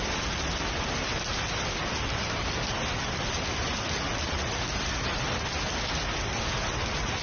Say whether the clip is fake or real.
real